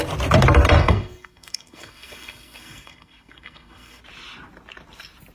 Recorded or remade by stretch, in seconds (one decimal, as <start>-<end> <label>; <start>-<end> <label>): 0.0-0.8 recorded; 0.8-4.0 remade; 4.0-5.3 recorded